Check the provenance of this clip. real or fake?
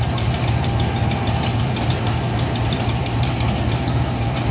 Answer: real